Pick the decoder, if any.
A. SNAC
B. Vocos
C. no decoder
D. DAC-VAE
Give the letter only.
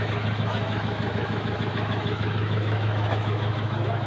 D